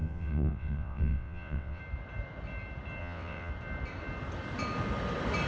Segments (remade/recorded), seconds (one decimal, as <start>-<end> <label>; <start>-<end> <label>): 0.0-1.8 remade; 1.8-3.0 recorded; 3.0-3.5 remade; 3.5-5.5 recorded